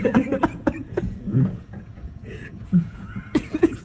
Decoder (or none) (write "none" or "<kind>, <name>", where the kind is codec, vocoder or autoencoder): vocoder, Vocos